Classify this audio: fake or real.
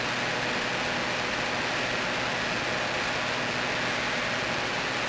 real